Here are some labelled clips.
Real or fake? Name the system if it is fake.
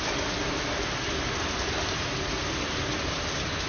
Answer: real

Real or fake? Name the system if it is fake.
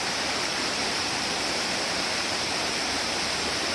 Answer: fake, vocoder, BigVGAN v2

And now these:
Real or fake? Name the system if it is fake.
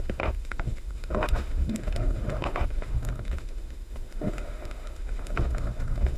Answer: fake, autoencoder, DAC-VAE